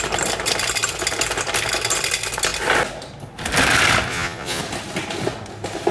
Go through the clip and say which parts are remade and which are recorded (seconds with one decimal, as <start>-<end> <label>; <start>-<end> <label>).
0.0-4.1 recorded; 4.1-4.6 remade; 4.6-5.9 recorded